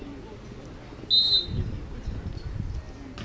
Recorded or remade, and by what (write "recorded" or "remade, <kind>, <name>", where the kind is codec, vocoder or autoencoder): recorded